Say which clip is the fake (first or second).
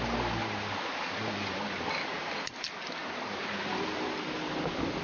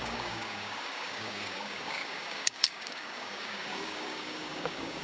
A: second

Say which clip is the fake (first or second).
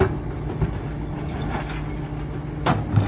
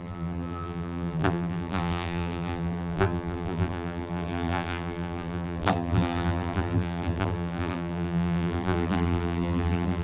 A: second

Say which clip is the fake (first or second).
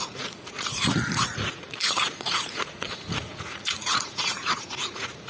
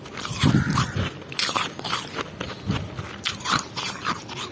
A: first